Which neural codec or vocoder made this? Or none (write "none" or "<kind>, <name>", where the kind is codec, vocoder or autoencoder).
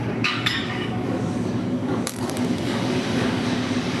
codec, DAC